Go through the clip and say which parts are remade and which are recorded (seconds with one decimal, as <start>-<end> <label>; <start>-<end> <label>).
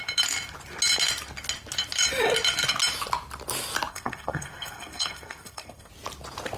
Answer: 0.0-3.9 recorded; 3.9-5.9 remade; 5.9-6.6 recorded